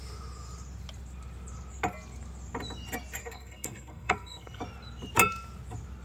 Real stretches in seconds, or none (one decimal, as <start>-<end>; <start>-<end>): 0.0-3.2; 4.6-6.0